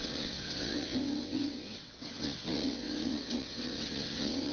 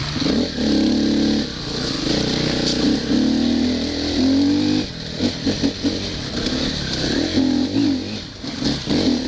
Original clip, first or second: second